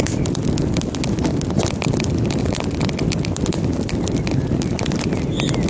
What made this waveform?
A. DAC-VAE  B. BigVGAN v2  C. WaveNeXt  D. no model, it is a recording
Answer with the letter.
D